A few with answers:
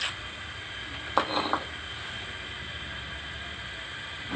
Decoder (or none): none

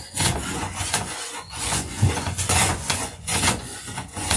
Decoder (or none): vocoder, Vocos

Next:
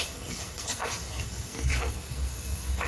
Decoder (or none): codec, SNAC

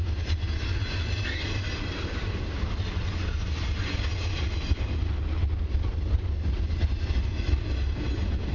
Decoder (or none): none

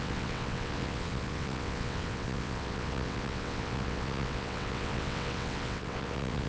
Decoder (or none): vocoder, WaveNeXt